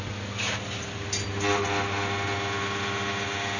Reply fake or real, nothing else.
real